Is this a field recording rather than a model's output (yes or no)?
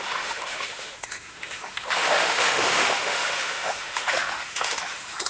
no